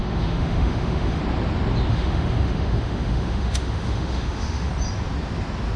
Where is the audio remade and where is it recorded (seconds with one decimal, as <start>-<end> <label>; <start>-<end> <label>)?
0.0-1.2 remade; 1.2-1.9 recorded; 1.9-4.7 remade; 4.7-5.8 recorded